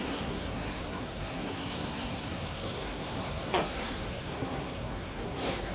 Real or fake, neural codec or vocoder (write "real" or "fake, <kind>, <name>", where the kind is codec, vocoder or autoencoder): fake, codec, SNAC